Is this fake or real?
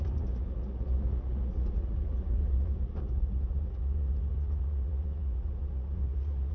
fake